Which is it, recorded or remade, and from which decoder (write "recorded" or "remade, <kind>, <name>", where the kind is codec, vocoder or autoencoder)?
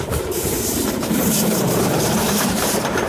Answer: remade, vocoder, BigVGAN v2